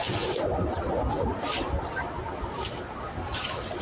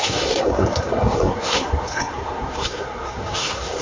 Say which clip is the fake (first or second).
second